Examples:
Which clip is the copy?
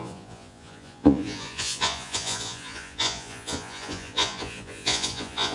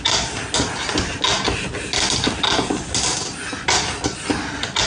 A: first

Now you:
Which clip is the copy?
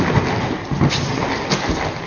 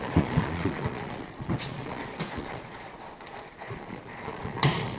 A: second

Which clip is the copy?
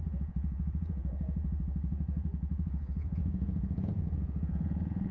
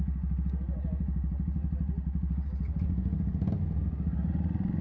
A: first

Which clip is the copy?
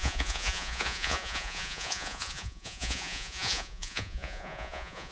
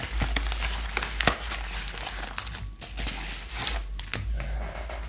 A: first